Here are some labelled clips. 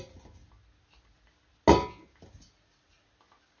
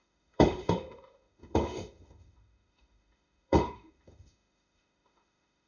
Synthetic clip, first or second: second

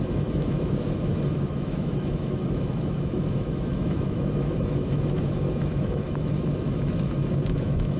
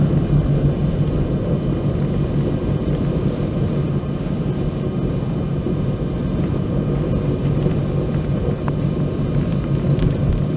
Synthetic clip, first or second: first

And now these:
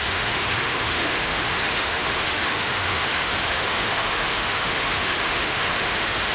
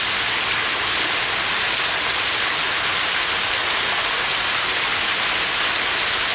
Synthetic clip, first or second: first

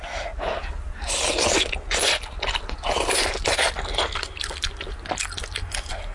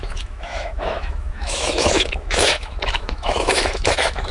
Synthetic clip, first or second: second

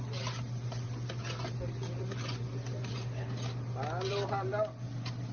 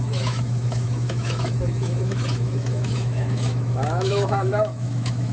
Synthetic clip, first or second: second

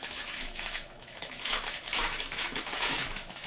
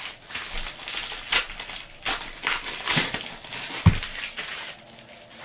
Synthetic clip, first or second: first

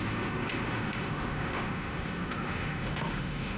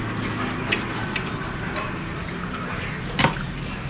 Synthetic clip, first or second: first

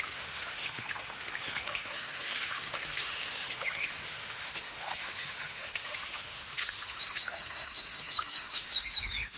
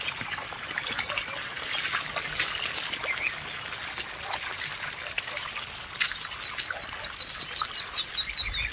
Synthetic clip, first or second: first